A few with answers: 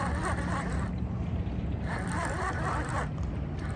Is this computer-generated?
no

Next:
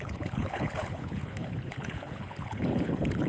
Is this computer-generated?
yes